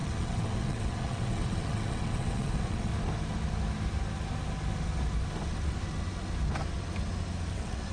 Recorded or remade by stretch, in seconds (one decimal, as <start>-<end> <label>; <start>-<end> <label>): 0.0-2.9 remade; 2.9-7.5 recorded; 7.5-7.9 remade